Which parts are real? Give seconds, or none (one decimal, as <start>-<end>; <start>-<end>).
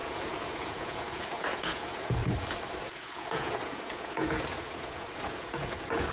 2.2-2.8